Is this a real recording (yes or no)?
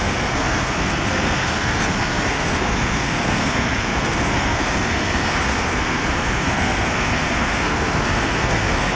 no